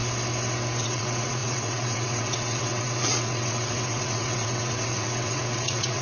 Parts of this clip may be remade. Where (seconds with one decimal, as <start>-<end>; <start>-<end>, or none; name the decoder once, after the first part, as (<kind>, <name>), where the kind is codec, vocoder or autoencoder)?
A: 0.8-6.0 (vocoder, WaveNeXt)